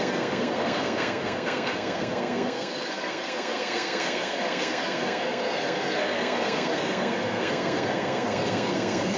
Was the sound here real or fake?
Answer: fake